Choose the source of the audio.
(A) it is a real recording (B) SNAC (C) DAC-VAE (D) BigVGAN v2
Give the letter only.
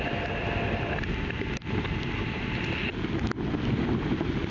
A